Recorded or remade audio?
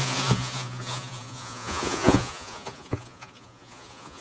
remade